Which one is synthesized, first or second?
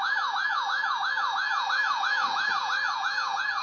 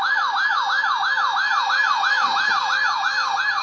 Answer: first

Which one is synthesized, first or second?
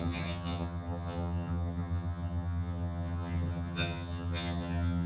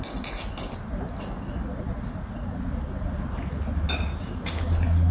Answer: first